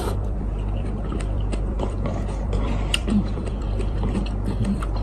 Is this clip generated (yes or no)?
yes